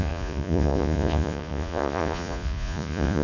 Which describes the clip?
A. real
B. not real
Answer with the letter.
B